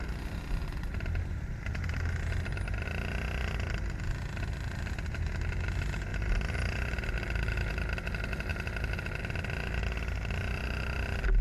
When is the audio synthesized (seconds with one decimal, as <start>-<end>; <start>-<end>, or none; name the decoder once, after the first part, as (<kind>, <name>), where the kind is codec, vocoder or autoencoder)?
none